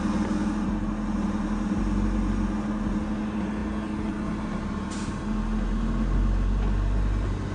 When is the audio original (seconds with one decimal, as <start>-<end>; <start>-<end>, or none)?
0.0-7.5